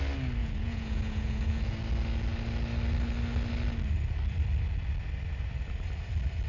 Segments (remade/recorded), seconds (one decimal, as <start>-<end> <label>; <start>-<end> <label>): 0.0-0.4 recorded; 0.4-1.7 remade; 1.7-6.5 recorded